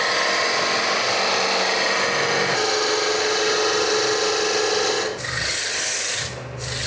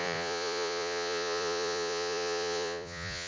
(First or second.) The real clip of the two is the first